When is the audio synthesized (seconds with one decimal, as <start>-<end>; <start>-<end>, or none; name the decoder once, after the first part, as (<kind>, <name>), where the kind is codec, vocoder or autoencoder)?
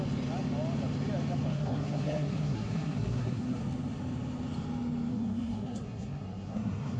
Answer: 1.5-3.6 (codec, SNAC); 5.1-7.0